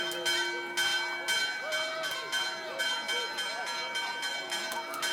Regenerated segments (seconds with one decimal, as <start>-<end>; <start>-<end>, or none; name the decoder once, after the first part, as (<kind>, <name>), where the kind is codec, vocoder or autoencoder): none